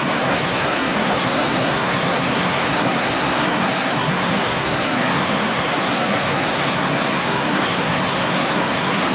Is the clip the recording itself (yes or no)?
no